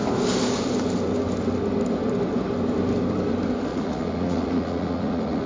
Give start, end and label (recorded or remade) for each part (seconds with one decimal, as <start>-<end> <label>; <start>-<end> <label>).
0.0-3.7 recorded; 3.7-5.5 remade